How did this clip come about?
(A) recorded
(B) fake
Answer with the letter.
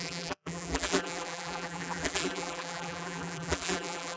B